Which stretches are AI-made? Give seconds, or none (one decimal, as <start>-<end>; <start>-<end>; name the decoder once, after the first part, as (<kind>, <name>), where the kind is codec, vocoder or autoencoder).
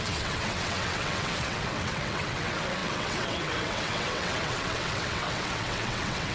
0.0-6.3 (vocoder, WaveNeXt)